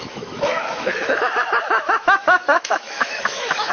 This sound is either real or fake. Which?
fake